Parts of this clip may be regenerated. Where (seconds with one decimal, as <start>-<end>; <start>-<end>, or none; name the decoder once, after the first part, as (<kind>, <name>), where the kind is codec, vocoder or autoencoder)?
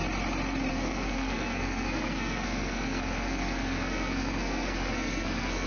0.7-5.7 (codec, SNAC)